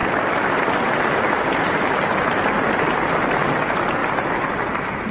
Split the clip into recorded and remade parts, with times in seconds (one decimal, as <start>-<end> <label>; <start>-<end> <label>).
0.0-5.1 recorded